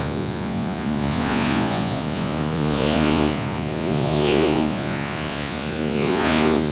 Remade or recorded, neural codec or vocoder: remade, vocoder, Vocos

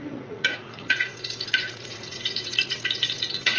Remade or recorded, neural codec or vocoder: remade, vocoder, Vocos